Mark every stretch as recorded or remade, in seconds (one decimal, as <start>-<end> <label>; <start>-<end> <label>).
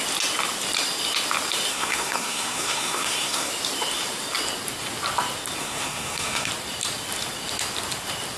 0.0-1.7 recorded; 1.7-3.5 remade; 3.5-5.6 recorded; 5.6-6.5 remade; 6.5-8.4 recorded